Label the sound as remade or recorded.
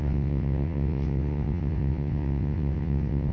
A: remade